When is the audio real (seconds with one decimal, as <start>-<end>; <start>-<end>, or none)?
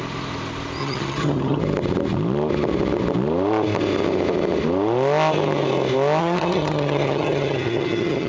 0.0-0.8; 1.6-6.2